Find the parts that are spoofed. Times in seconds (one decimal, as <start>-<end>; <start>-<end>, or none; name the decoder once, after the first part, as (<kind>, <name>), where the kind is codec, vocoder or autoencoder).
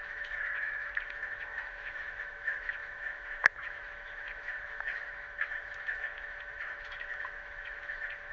0.0-8.3 (autoencoder, DAC-VAE)